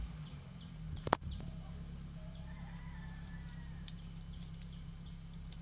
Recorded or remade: remade